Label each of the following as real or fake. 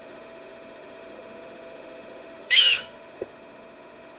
fake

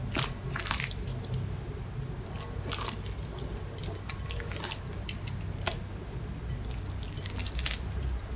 real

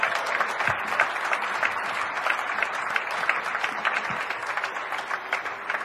real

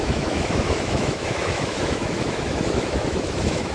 fake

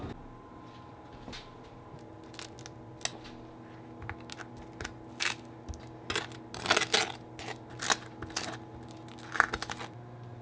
real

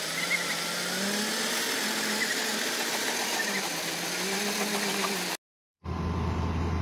real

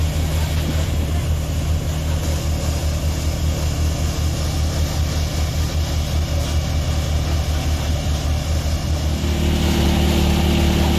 real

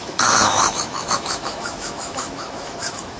fake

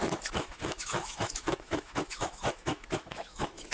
fake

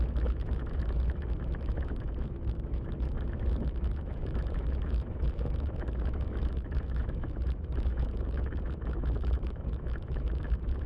fake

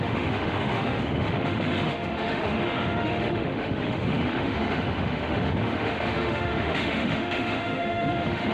fake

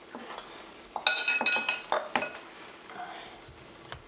real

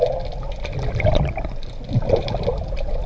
real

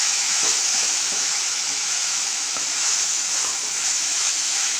fake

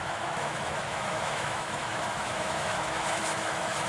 fake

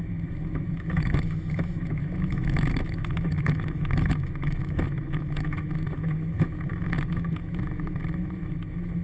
fake